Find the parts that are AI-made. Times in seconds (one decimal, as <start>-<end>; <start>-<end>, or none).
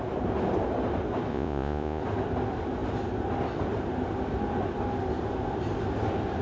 1.3-2.0